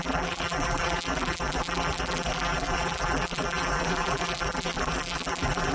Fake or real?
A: fake